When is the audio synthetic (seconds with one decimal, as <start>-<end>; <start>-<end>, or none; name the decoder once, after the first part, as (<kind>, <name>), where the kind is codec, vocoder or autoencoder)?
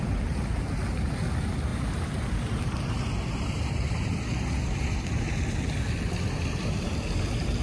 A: 1.7-5.4 (vocoder, BigVGAN v2)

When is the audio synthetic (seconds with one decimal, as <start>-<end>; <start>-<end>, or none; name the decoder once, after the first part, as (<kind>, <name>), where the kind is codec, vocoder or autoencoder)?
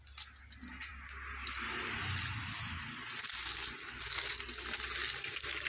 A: none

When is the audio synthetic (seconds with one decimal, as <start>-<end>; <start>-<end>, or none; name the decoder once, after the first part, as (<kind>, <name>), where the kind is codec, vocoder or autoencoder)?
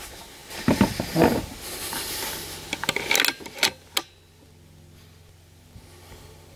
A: none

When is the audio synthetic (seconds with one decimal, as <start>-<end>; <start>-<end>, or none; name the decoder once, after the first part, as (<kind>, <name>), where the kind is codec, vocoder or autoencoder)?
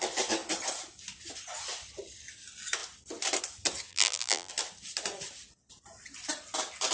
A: 3.9-4.5 (vocoder, BigVGAN v2)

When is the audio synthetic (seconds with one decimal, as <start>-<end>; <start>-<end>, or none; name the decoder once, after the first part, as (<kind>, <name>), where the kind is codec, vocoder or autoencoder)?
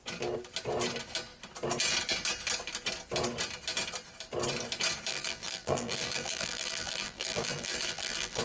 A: 5.1-8.4 (vocoder, BigVGAN v2)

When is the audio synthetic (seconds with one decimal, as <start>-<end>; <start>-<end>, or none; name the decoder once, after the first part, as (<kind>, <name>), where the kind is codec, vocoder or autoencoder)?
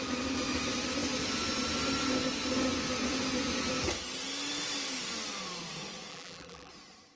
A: 6.1-6.7 (vocoder, BigVGAN v2)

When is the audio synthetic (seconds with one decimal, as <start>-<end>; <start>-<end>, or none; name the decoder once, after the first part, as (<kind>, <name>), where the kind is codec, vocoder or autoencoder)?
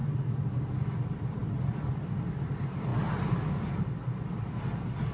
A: 0.6-2.9 (vocoder, BigVGAN v2); 3.7-5.1